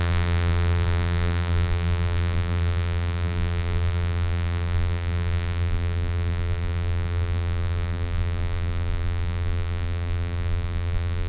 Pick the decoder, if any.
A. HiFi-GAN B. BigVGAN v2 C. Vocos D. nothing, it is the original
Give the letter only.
B